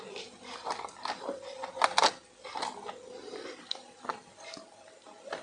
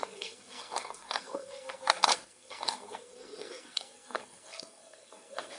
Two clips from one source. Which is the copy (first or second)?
second